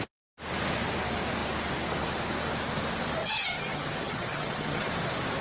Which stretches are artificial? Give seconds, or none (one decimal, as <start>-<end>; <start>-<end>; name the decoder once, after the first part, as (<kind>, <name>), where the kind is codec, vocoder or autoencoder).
3.2-4.9 (vocoder, HiFi-GAN)